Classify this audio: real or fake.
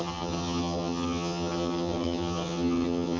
fake